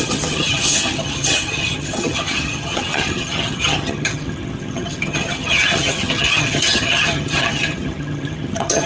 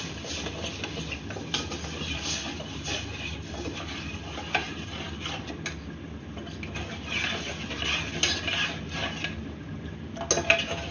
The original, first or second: second